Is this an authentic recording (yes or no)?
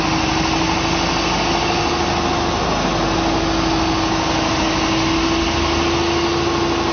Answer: yes